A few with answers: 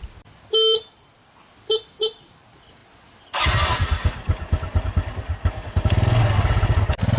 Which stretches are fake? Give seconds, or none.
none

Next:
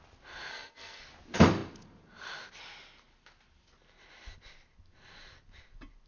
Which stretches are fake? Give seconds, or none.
0.5-1.0 (codec, SNAC)

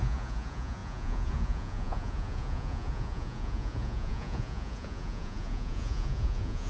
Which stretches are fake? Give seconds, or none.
0.0-6.7 (vocoder, Vocos)